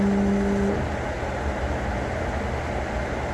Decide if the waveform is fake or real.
real